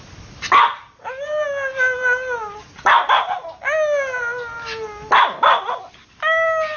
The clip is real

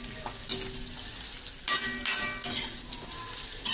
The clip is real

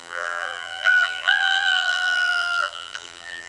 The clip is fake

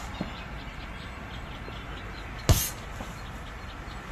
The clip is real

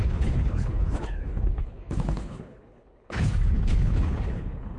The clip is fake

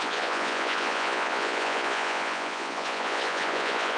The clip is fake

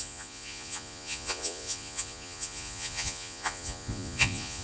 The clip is fake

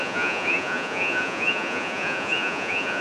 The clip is fake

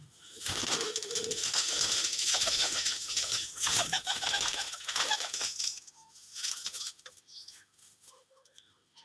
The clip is fake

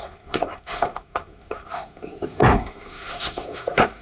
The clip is fake